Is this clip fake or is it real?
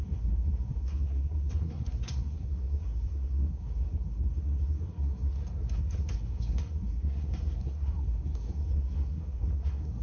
fake